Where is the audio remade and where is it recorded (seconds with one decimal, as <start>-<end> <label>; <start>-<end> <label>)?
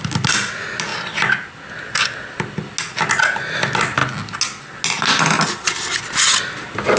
0.0-7.0 recorded